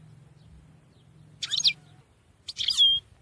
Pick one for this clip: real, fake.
real